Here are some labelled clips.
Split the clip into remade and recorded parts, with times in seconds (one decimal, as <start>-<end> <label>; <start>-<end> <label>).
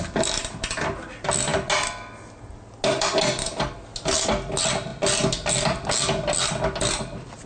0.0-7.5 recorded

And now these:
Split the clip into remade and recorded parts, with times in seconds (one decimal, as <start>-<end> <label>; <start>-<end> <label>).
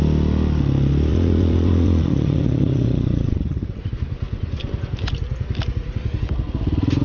0.0-1.1 recorded; 1.1-3.9 remade; 3.9-7.0 recorded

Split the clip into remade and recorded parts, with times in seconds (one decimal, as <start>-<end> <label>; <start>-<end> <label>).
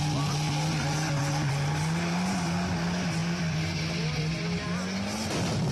0.0-5.7 recorded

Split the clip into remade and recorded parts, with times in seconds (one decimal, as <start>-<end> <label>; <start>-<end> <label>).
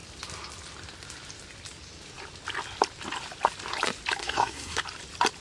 0.0-4.2 recorded; 4.2-4.8 remade; 4.8-5.4 recorded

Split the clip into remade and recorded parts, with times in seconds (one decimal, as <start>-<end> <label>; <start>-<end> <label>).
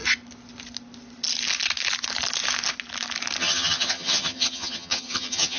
0.0-3.4 recorded; 3.4-5.6 remade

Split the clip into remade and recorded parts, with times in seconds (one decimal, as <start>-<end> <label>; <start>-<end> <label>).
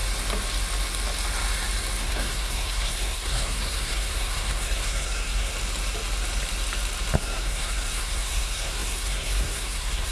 0.0-2.0 recorded; 2.0-5.5 remade; 5.5-7.2 recorded; 7.2-10.1 remade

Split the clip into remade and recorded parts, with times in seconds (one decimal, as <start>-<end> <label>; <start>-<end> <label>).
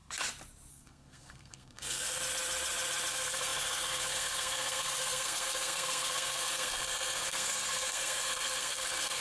0.0-0.7 recorded; 0.7-2.2 remade; 2.2-3.1 recorded; 3.1-9.2 remade